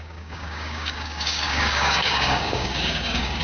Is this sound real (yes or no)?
no